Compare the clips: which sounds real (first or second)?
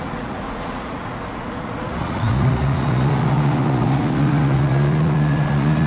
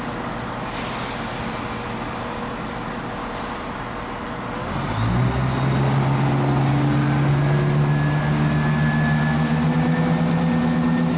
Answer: second